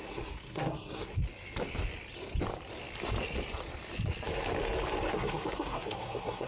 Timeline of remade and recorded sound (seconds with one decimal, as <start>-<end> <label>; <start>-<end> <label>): 0.0-1.2 remade; 1.2-5.1 recorded; 5.1-6.5 remade